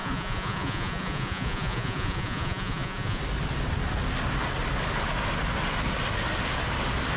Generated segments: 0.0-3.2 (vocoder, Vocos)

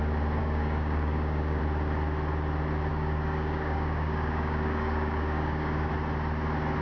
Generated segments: 0.4-1.6 (codec, DAC); 2.9-5.9

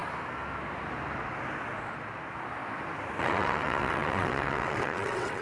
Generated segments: 3.2-5.4 (vocoder, WaveNeXt)

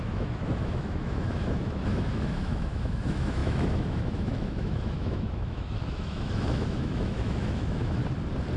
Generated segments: 0.0-8.0 (autoencoder, DAC-VAE)

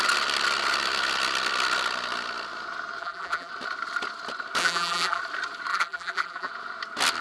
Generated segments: 3.0-3.5 (vocoder, BigVGAN v2); 4.6-5.2; 5.7-6.5

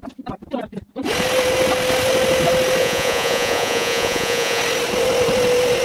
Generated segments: 2.8-4.6 (vocoder, Vocos)

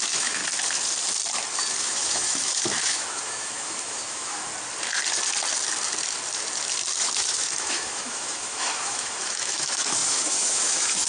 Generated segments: 0.0-0.4 (autoencoder, DAC-VAE); 1.8-4.5; 7.0-11.1